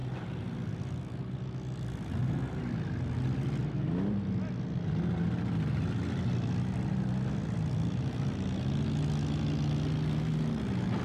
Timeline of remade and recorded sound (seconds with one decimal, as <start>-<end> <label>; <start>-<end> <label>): 0.0-11.0 recorded